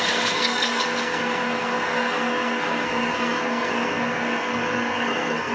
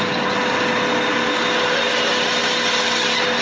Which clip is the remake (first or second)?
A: first